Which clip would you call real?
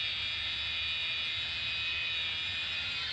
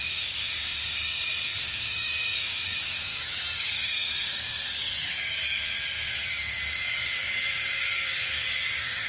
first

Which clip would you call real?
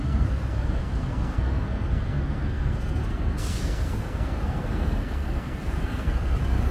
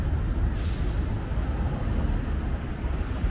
second